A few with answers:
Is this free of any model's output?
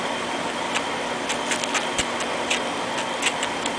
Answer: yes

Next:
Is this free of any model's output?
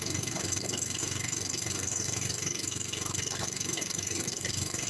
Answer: no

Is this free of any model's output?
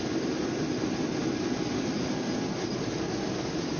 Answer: yes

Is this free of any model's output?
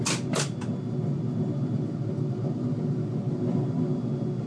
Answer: yes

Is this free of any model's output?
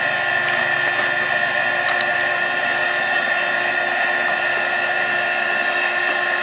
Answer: yes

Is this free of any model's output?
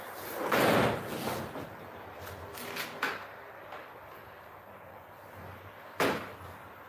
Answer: yes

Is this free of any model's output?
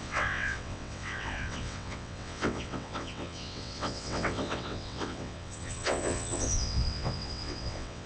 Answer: no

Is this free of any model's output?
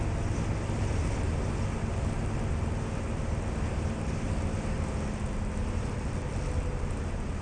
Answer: yes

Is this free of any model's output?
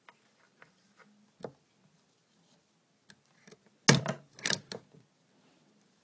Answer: yes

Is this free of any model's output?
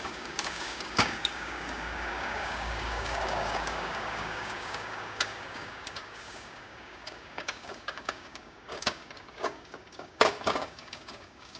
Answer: no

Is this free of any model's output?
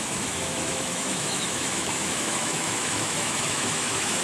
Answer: no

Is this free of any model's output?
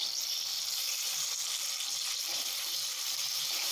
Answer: yes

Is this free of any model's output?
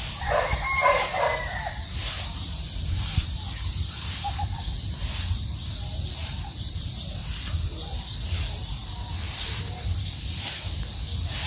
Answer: no